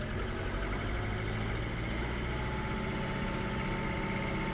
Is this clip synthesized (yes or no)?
no